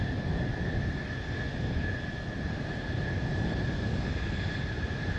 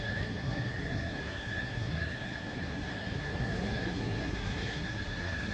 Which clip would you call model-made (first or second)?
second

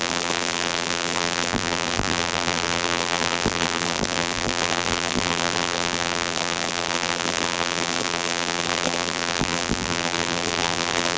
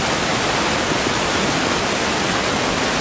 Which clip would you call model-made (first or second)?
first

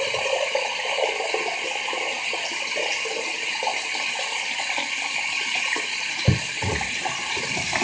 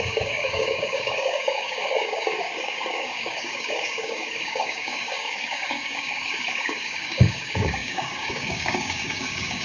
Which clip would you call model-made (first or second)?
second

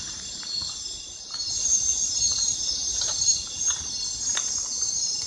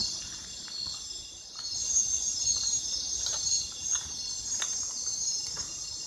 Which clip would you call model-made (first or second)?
first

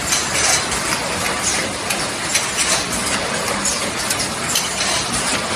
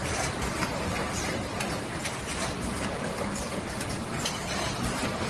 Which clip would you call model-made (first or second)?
second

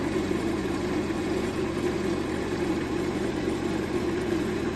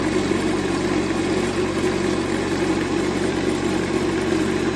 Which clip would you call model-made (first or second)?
first